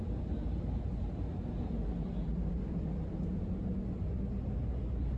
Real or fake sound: real